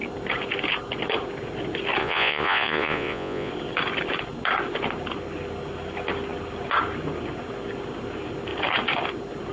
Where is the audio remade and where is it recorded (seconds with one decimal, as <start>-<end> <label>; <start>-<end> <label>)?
0.0-2.0 recorded; 2.0-3.5 remade; 3.5-9.5 recorded